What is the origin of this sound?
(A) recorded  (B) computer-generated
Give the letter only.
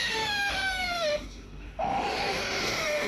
B